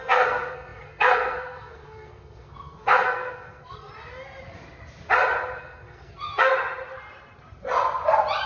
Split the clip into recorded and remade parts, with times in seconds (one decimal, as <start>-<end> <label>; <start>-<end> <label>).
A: 0.0-3.9 remade; 3.9-5.6 recorded; 5.6-6.5 remade; 6.5-8.5 recorded